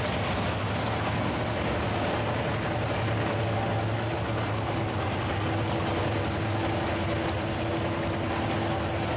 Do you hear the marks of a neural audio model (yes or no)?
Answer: no